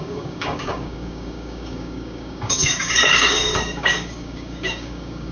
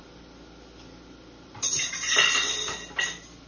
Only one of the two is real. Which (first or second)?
second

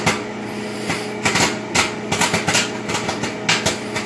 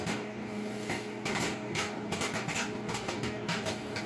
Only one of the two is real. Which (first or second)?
first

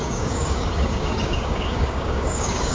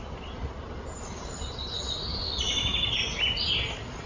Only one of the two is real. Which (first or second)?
second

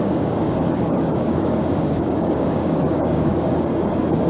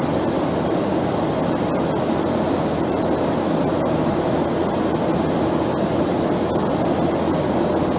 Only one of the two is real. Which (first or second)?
second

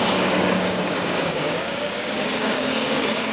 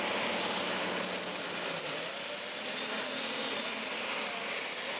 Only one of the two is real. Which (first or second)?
second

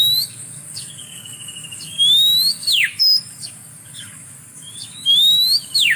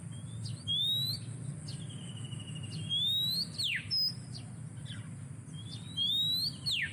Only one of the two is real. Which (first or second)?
second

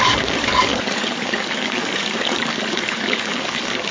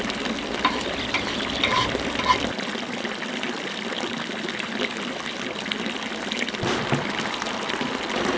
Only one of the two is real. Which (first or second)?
second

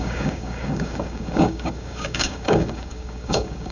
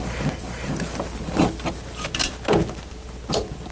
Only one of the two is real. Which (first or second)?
second